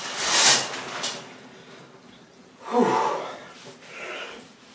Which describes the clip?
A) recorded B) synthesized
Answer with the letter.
A